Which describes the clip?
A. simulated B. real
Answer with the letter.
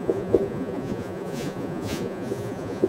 A